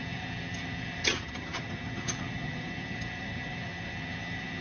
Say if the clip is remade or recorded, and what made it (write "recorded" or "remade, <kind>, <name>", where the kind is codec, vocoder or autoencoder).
remade, vocoder, HiFi-GAN